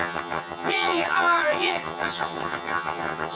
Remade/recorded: remade